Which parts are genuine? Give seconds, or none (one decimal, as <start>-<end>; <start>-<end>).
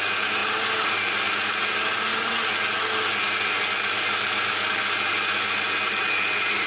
0.0-6.7